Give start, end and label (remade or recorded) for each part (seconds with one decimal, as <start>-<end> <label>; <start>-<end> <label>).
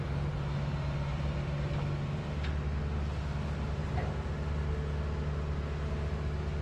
0.0-1.1 recorded; 1.1-2.8 remade; 2.8-6.6 recorded